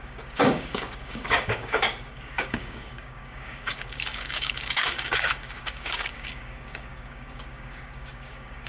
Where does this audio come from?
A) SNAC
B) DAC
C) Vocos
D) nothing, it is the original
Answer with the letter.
B